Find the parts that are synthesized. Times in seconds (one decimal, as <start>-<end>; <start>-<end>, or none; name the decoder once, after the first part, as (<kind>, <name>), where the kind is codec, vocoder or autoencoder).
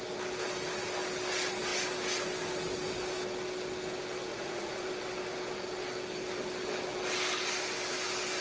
4.3-4.9 (vocoder, Vocos)